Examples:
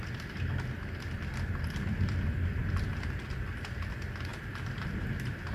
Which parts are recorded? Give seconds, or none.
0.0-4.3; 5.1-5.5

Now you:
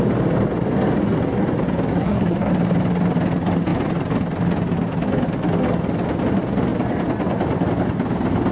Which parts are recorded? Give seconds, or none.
0.0-1.9; 2.5-8.5